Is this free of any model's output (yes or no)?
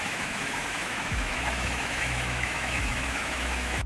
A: no